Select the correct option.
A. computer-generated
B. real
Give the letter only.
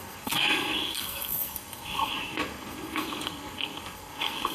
A